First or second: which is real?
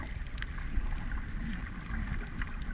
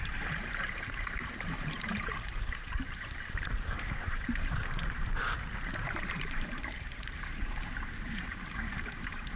first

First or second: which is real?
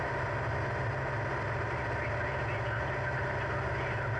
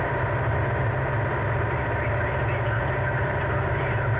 first